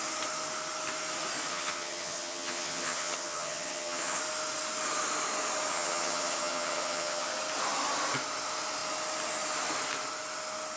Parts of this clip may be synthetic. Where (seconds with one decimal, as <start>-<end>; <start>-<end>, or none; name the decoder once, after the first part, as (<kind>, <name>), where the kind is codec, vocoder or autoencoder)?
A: 1.5-4.2 (vocoder, HiFi-GAN); 5.7-7.3